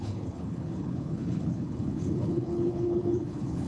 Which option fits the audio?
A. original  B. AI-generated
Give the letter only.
B